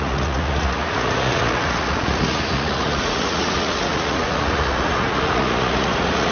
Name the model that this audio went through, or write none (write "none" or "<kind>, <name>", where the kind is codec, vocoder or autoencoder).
vocoder, Vocos